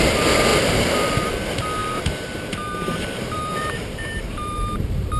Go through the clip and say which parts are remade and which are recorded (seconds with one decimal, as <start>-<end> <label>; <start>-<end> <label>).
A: 0.0-0.5 recorded; 0.5-1.3 remade; 1.3-1.8 recorded; 1.8-5.2 remade